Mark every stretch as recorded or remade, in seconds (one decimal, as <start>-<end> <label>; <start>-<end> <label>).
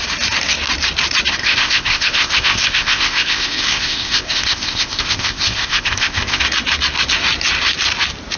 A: 0.0-1.4 recorded; 1.4-6.4 remade; 6.4-8.4 recorded